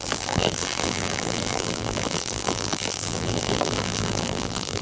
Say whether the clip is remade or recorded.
remade